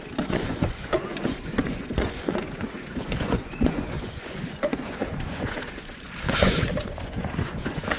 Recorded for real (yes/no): no